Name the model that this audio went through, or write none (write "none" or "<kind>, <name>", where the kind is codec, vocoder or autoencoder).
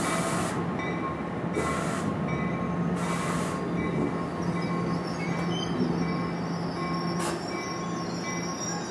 none